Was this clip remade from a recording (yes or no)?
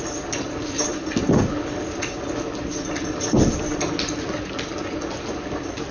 no